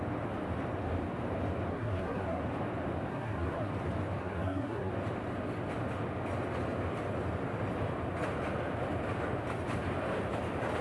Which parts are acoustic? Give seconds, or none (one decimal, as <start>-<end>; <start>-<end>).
0.0-1.7; 2.4-3.1; 3.7-4.2; 4.9-10.8